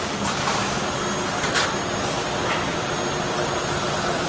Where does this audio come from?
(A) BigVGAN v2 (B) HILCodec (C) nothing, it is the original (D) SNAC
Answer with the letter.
C